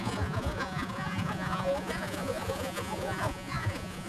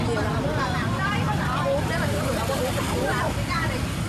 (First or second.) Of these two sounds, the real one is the second